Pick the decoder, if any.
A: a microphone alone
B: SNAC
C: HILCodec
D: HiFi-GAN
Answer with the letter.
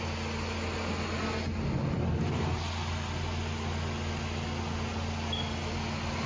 A